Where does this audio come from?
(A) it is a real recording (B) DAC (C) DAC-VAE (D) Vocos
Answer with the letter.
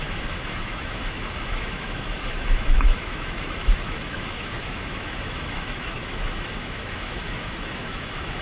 C